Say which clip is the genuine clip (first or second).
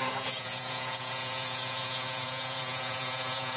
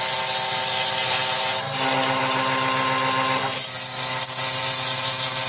second